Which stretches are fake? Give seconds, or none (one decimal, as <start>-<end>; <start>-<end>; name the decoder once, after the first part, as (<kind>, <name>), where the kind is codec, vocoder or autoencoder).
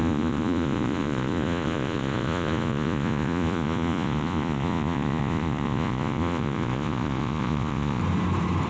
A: 0.0-8.0 (vocoder, Vocos)